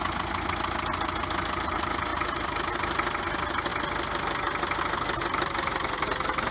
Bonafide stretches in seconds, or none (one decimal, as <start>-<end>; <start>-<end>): 0.0-6.5

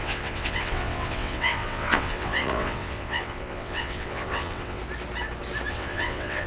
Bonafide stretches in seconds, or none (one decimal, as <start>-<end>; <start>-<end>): 4.8-5.7